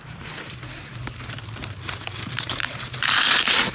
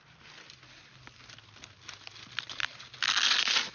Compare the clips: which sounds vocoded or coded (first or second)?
first